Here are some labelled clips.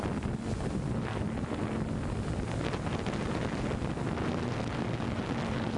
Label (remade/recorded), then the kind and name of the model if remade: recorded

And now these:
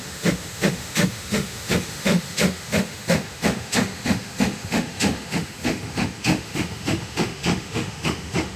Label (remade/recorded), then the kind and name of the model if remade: remade, autoencoder, DAC-VAE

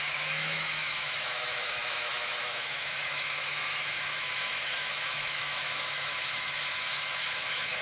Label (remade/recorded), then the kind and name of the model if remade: remade, autoencoder, DAC-VAE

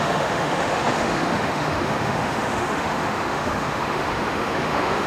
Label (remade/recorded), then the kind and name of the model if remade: remade, autoencoder, DAC-VAE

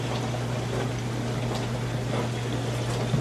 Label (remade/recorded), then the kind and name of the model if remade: recorded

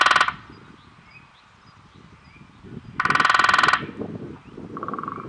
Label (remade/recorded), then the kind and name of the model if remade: recorded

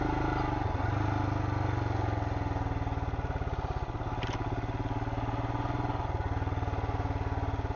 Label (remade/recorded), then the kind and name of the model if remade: recorded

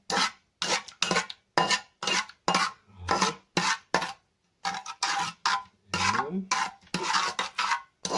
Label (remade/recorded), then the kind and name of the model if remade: recorded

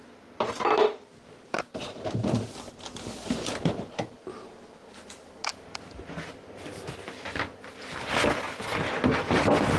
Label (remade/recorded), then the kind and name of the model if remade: recorded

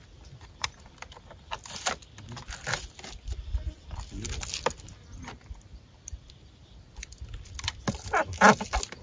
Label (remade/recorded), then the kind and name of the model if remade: recorded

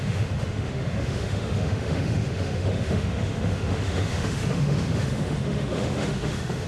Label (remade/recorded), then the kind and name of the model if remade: remade, autoencoder, DAC-VAE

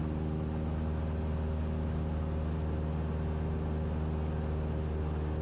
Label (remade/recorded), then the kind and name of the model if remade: recorded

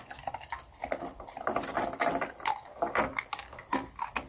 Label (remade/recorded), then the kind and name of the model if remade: recorded